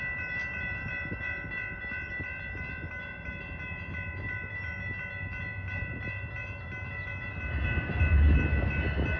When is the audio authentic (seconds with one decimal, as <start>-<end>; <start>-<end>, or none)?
0.0-9.2